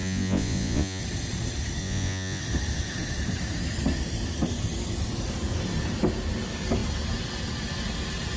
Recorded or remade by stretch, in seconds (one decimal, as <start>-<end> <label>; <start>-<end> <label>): 0.0-1.0 remade; 1.0-1.8 recorded; 1.8-2.4 remade; 2.4-8.4 recorded